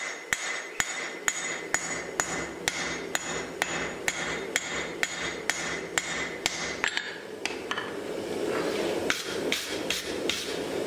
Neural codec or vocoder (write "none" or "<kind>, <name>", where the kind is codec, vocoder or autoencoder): none